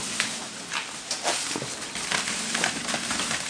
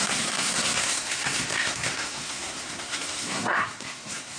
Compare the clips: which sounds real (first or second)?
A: first